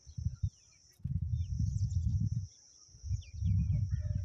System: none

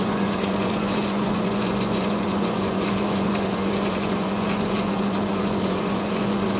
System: vocoder, Vocos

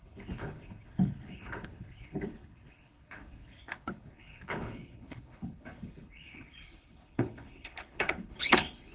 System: codec, HILCodec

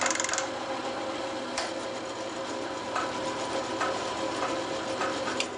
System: none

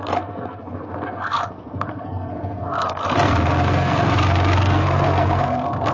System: codec, SNAC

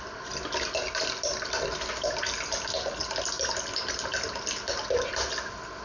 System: none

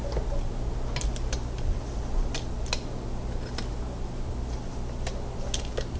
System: none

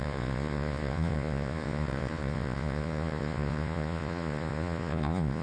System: vocoder, Vocos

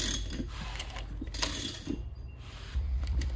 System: vocoder, BigVGAN v2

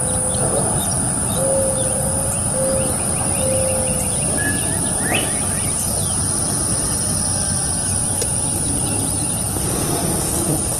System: none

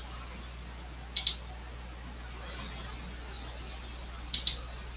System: none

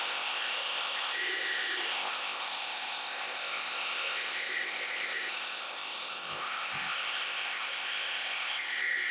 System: codec, ZipCodec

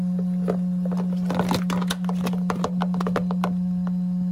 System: none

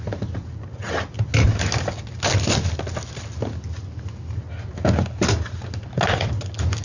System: none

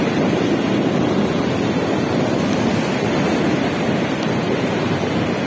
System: none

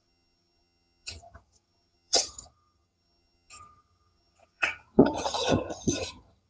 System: vocoder, HiFi-GAN